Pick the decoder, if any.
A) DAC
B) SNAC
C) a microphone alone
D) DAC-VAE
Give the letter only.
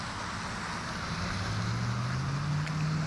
C